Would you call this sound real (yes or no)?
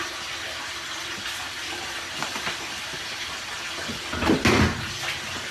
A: yes